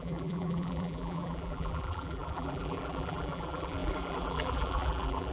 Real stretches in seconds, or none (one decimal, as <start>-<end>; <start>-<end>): none